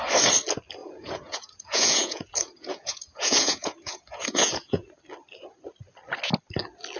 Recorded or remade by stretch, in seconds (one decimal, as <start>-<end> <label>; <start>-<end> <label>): 0.0-0.8 recorded; 0.8-5.0 remade; 5.0-7.0 recorded